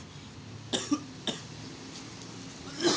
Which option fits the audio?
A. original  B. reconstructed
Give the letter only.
A